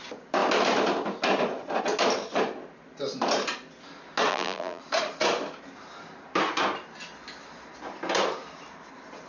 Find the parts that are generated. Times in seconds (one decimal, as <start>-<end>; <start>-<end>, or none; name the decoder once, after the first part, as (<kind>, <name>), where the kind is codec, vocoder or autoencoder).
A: 4.3-4.8 (vocoder, BigVGAN v2)